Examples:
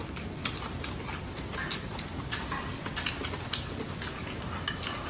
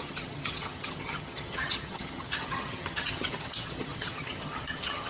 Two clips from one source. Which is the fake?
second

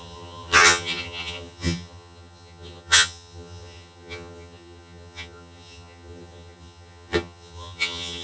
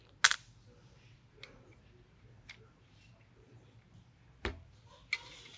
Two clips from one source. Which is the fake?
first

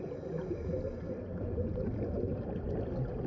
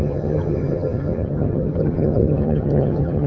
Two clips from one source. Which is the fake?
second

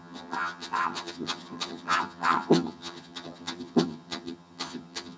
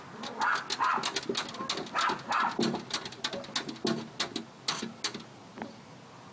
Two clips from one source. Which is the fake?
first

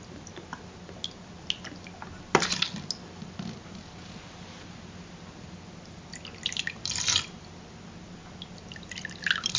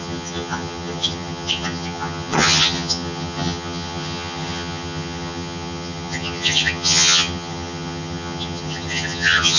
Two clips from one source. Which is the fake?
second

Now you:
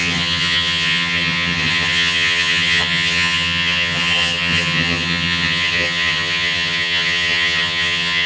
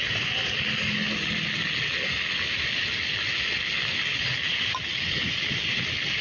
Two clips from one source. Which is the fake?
first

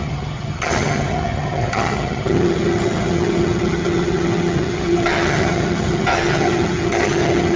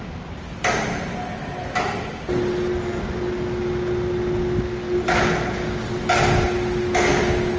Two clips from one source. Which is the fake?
first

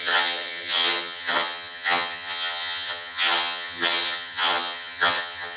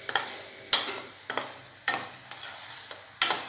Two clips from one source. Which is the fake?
first